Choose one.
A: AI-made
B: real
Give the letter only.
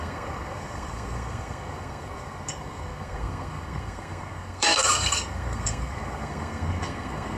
A